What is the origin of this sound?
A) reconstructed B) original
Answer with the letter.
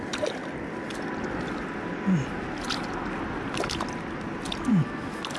B